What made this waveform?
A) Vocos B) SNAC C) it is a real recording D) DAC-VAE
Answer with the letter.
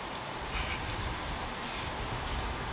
C